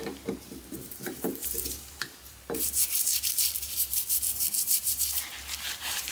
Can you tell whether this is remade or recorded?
remade